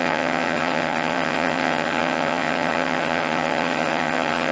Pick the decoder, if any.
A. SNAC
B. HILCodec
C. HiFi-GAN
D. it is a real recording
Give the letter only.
C